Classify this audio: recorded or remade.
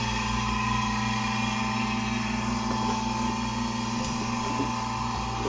recorded